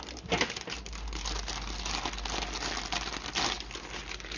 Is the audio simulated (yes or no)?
no